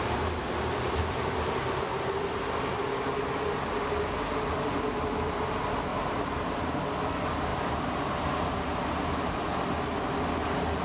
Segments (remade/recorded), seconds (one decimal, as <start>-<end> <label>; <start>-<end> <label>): 0.0-5.9 recorded; 5.9-6.6 remade; 6.6-7.5 recorded; 7.5-8.1 remade; 8.1-10.8 recorded